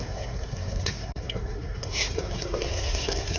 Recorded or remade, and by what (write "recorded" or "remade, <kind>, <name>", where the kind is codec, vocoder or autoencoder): remade, codec, SNAC